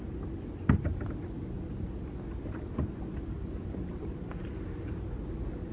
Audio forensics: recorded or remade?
recorded